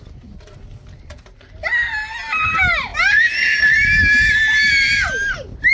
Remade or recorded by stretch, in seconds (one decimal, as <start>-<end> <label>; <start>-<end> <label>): 0.0-2.9 recorded; 2.9-3.9 remade; 3.9-5.7 recorded